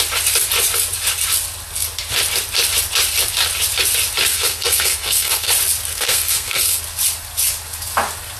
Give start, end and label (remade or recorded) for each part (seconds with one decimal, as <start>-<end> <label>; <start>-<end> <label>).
0.0-4.3 recorded; 4.3-5.5 remade; 5.5-5.9 recorded; 5.9-6.8 remade; 6.8-8.4 recorded